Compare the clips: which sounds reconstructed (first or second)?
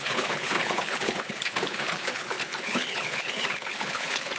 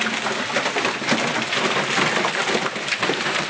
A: first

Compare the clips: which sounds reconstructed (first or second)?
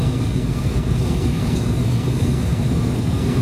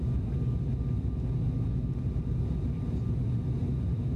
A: first